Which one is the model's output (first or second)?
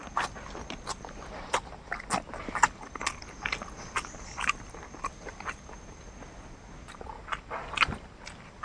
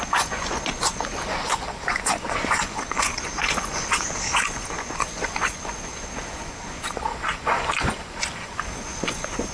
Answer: second